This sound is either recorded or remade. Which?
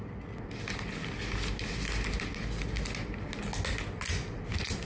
recorded